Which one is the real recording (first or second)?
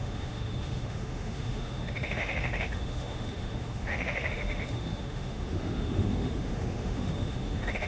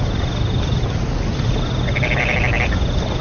second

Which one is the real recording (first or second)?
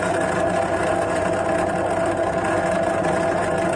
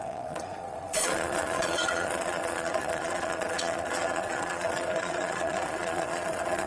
first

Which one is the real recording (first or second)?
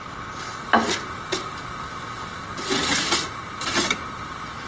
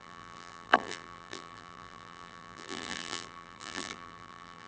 first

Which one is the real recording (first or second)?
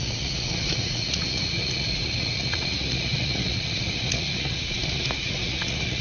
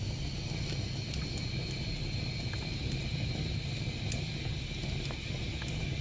second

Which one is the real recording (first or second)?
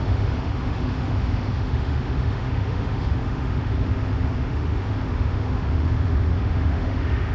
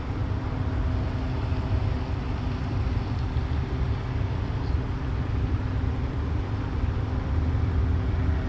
second